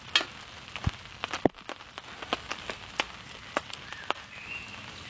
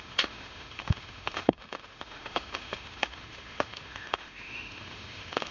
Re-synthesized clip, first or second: second